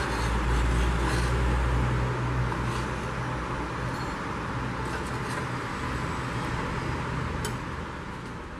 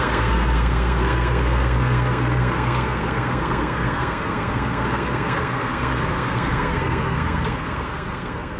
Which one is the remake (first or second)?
second